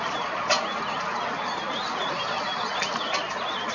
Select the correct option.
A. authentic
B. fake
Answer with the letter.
A